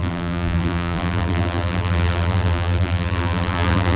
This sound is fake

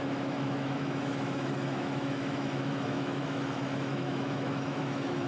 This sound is fake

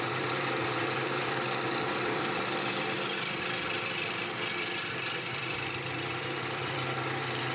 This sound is fake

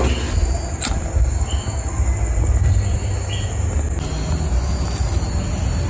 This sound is real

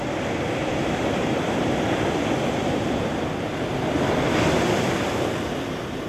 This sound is real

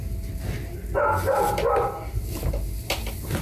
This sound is real